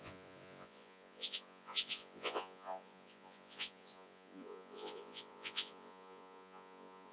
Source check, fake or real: fake